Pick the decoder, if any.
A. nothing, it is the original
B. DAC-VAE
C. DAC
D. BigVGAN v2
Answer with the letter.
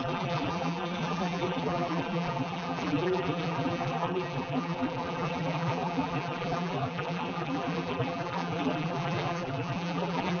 D